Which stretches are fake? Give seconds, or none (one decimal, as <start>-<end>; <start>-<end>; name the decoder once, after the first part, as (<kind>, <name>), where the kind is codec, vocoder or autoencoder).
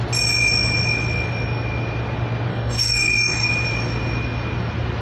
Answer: 2.5-3.5 (codec, DAC)